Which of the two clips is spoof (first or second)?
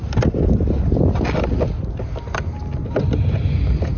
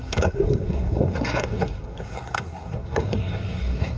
second